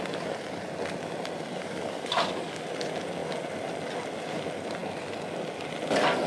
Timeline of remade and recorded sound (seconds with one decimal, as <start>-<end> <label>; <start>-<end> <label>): 0.0-1.5 recorded; 1.5-2.6 remade; 2.6-6.3 recorded